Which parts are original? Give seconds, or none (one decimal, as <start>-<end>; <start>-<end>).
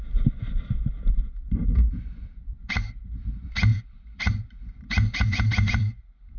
0.0-3.7; 4.3-4.7